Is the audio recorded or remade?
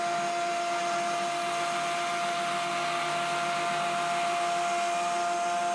recorded